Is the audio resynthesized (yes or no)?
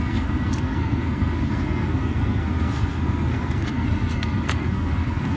yes